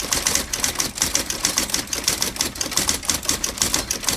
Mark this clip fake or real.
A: real